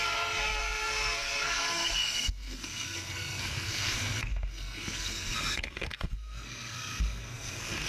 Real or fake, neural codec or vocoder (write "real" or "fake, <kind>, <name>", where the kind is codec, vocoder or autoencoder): fake, codec, SNAC